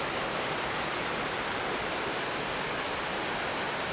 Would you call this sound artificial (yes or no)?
no